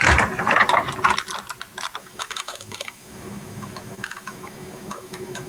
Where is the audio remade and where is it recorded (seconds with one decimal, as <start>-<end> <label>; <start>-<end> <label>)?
0.0-2.0 recorded; 2.0-5.5 remade